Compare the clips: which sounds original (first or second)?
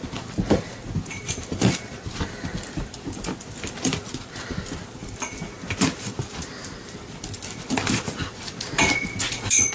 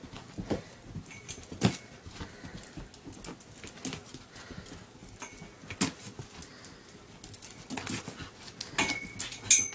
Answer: second